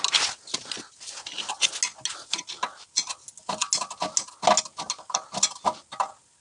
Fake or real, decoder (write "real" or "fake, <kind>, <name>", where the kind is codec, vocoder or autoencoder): real